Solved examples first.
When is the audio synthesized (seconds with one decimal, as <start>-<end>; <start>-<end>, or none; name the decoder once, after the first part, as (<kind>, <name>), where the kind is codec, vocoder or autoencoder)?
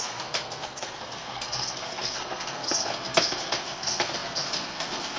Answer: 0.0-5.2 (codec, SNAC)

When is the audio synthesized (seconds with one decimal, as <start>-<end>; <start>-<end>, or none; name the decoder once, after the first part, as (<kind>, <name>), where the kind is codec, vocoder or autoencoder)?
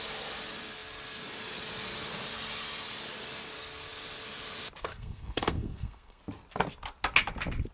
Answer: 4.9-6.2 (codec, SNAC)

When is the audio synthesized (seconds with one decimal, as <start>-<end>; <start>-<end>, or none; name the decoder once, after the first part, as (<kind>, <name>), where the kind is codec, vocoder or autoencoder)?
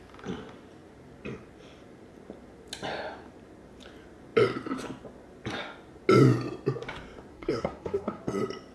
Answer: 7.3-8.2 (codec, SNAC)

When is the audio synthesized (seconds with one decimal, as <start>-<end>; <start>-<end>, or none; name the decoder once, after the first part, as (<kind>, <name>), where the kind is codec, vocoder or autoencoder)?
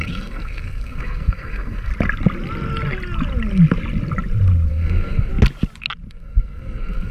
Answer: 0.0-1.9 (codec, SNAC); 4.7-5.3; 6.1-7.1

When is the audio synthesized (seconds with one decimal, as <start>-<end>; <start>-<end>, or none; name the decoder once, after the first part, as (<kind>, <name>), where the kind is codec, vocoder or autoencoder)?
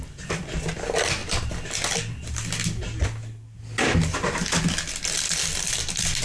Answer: none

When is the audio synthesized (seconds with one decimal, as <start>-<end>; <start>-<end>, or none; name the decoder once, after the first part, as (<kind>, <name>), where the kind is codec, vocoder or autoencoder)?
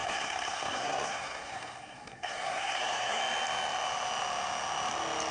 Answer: 0.0-3.2 (codec, SNAC)